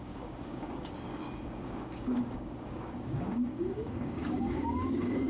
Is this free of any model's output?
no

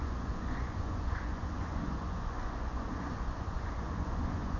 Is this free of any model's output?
no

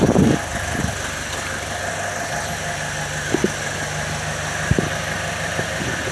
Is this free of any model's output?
yes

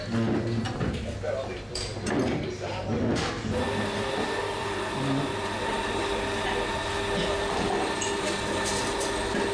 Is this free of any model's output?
yes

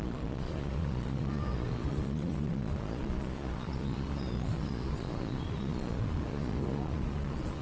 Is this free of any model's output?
no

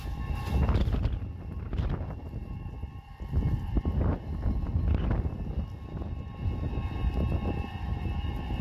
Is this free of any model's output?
yes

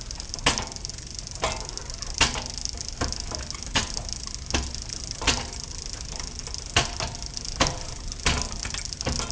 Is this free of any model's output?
yes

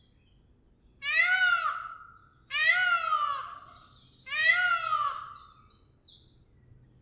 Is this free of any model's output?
yes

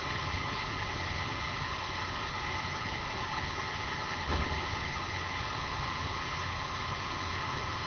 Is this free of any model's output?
no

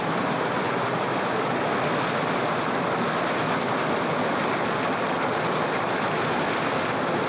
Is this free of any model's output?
yes